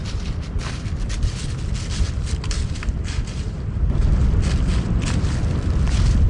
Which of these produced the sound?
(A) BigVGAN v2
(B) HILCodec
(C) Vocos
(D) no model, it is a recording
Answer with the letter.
D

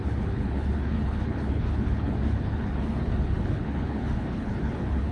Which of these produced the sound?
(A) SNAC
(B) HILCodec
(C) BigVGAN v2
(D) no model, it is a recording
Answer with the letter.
B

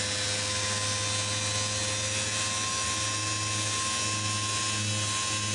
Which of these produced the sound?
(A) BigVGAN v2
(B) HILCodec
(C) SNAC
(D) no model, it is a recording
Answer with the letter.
D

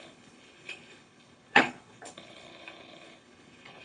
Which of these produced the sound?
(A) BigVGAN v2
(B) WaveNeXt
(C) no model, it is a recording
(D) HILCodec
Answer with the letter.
D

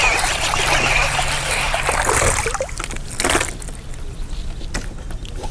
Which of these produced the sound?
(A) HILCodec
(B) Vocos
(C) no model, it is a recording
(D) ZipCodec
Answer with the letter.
C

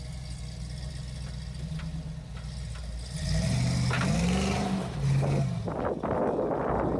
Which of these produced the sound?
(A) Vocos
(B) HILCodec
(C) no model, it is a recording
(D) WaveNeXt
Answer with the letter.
C